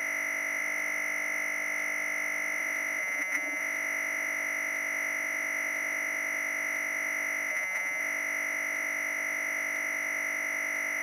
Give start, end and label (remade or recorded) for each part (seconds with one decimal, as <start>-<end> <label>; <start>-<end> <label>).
0.0-3.0 recorded; 3.0-3.6 remade; 3.6-7.5 recorded; 7.5-8.0 remade; 8.0-11.0 recorded

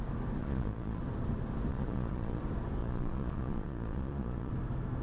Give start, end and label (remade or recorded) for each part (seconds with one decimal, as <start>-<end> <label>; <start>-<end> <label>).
0.0-0.4 recorded; 0.4-1.0 remade; 1.0-1.7 recorded; 1.7-2.4 remade; 2.4-2.8 recorded; 2.8-4.5 remade; 4.5-5.0 recorded

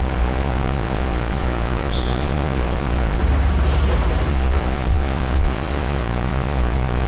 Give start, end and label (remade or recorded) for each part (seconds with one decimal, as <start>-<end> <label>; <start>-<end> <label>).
0.0-3.2 remade; 3.2-4.3 recorded; 4.3-7.1 remade

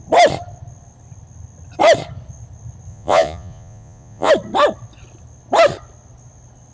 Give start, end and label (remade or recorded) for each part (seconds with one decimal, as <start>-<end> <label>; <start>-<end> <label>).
0.0-2.9 recorded; 2.9-4.3 remade; 4.3-6.7 recorded

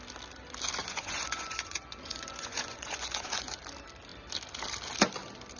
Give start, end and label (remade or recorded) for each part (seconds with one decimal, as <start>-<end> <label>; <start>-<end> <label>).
0.0-0.8 recorded; 0.8-3.6 remade; 3.6-5.6 recorded

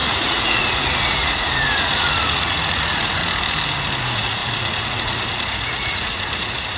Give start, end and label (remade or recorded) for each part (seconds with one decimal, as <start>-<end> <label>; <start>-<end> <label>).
0.0-3.2 remade; 3.2-4.0 recorded; 4.0-6.8 remade

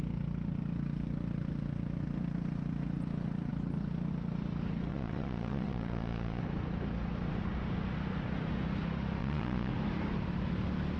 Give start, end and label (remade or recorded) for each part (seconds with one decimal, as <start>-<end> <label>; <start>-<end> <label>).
0.0-4.9 recorded; 4.9-6.4 remade; 6.4-9.2 recorded; 9.2-9.7 remade; 9.7-11.0 recorded

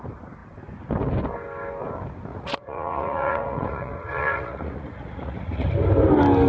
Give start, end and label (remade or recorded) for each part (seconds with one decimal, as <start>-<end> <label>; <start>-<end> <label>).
0.0-2.3 recorded; 2.3-5.7 remade; 5.7-6.5 recorded